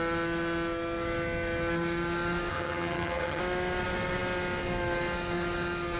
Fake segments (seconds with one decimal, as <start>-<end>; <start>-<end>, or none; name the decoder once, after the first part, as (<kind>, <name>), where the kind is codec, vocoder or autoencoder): 2.5-3.4 (vocoder, HiFi-GAN)